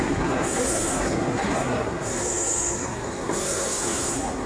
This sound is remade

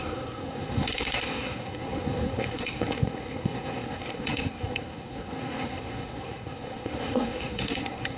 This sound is remade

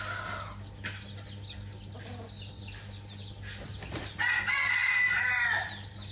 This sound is recorded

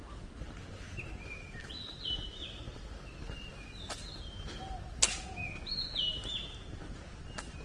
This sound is recorded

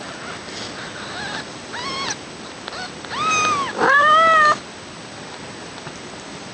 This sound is recorded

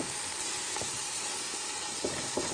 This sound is recorded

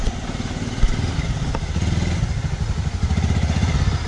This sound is recorded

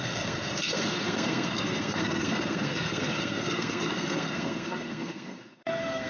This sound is remade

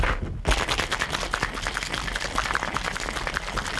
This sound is recorded